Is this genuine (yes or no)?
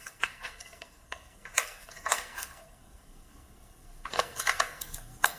no